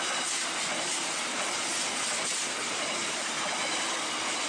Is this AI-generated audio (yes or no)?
no